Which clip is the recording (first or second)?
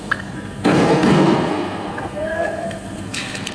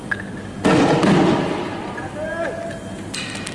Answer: second